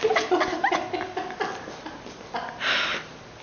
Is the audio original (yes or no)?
yes